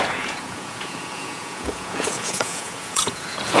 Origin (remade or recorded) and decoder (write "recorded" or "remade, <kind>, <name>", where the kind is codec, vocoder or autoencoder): remade, vocoder, Vocos